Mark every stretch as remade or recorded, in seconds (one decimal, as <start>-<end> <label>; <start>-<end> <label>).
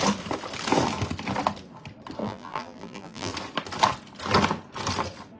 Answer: 0.0-2.2 recorded; 2.2-3.3 remade; 3.3-5.4 recorded